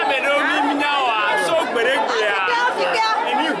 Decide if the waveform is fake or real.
real